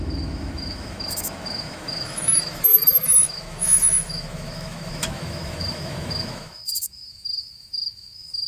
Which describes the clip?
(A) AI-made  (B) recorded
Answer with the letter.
A